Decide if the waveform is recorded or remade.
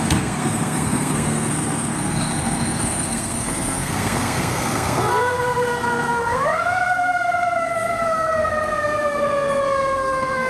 remade